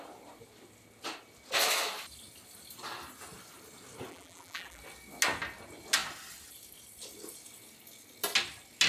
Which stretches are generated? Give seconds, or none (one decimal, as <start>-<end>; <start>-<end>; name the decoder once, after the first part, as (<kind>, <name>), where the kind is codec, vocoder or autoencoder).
4.1-4.8 (vocoder, BigVGAN v2)